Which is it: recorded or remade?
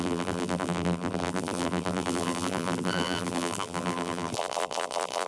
remade